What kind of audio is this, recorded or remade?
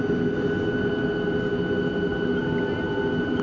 recorded